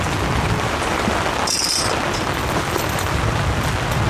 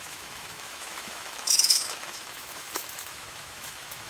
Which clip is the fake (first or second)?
second